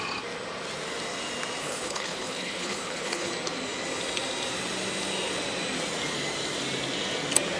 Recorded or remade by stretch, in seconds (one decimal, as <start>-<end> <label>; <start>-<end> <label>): 0.0-1.6 recorded; 1.6-3.3 remade; 3.3-7.6 recorded